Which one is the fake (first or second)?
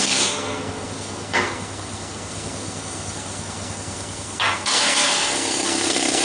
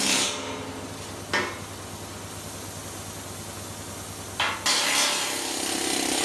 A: first